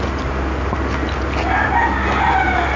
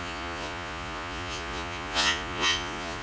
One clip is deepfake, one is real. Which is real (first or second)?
first